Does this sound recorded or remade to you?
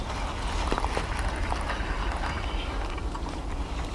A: recorded